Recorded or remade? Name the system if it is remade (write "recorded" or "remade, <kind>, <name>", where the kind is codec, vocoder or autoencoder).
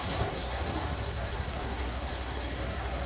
remade, codec, SNAC